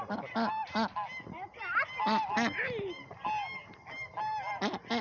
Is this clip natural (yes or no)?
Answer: yes